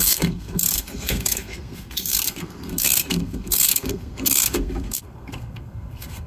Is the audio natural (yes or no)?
no